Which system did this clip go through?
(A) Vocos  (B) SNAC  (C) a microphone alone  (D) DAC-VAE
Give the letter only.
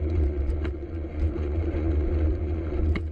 A